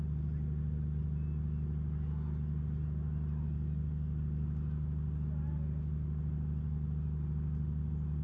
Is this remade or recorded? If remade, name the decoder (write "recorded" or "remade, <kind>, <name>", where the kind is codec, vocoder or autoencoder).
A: recorded